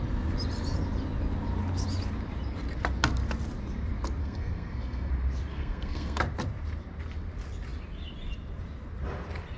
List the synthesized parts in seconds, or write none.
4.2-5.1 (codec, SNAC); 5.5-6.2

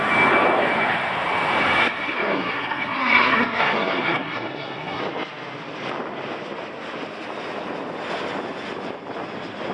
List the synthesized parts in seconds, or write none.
1.8-5.0 (codec, SNAC)

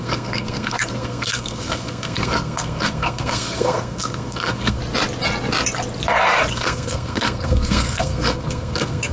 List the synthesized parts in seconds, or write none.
0.0-4.8 (codec, SNAC); 6.5-9.1